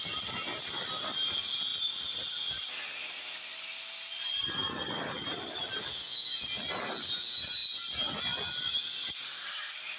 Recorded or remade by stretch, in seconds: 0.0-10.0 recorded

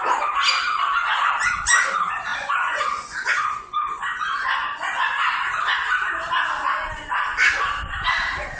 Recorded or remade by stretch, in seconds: 0.0-2.3 recorded; 2.3-4.9 remade; 4.9-8.6 recorded

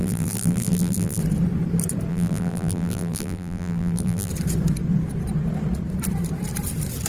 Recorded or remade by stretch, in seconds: 0.0-1.2 remade; 1.2-2.1 recorded; 2.1-4.3 remade; 4.3-7.1 recorded

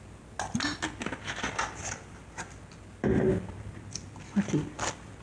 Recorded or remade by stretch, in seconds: 0.0-5.2 recorded

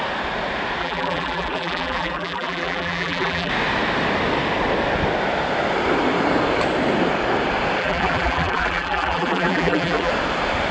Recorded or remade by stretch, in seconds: 0.0-0.8 recorded; 0.8-3.5 remade; 3.5-7.8 recorded; 7.8-10.1 remade; 10.1-10.7 recorded

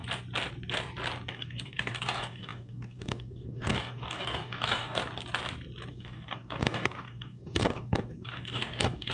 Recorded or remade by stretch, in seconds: 0.0-1.3 recorded; 1.3-5.0 remade; 5.0-5.9 recorded; 5.9-9.1 remade

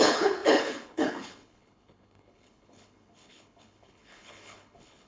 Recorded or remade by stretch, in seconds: 0.0-5.1 remade

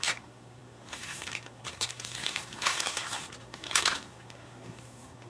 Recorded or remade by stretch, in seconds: 0.0-5.3 remade